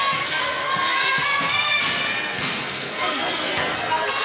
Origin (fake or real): fake